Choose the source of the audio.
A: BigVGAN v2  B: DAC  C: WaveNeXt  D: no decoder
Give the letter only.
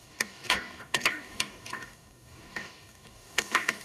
B